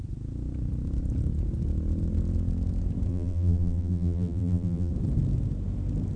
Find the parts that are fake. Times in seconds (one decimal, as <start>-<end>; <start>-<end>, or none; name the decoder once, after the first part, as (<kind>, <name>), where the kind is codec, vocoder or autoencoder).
3.1-4.9 (vocoder, BigVGAN v2)